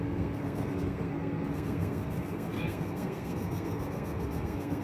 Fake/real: fake